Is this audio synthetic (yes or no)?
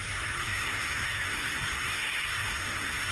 yes